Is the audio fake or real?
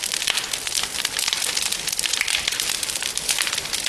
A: real